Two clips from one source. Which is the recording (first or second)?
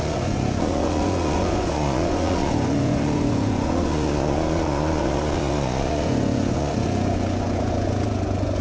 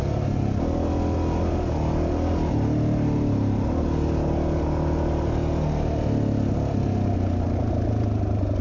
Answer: second